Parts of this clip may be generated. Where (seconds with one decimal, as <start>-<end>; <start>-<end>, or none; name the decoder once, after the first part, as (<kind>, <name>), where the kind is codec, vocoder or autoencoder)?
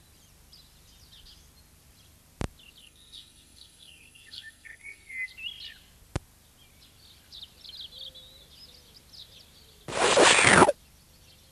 2.8-5.3 (codec, SNAC)